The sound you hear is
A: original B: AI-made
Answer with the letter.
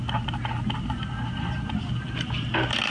A